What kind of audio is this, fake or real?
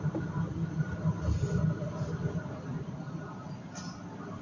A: real